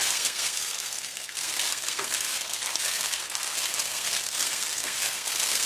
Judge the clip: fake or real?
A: fake